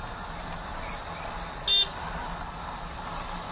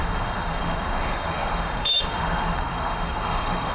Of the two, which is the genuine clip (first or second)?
first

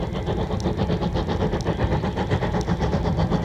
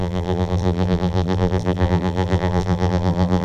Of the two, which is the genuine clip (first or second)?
first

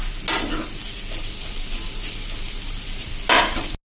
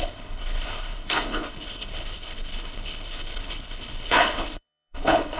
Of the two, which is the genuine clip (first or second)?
first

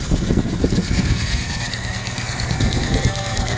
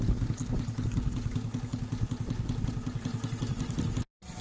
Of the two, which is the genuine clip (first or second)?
second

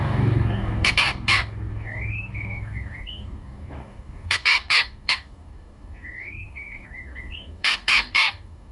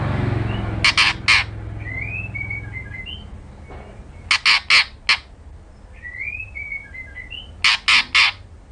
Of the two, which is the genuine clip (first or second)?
second